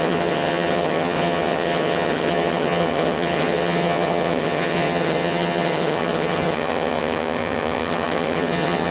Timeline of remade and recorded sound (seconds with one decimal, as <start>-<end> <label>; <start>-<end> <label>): 0.0-8.9 remade